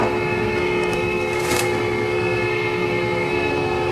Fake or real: fake